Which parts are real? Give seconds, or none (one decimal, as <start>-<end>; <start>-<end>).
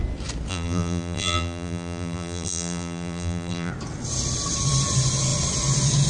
0.0-0.5; 3.7-6.1